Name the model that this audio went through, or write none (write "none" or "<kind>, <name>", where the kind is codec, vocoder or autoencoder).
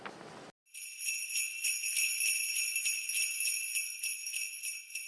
none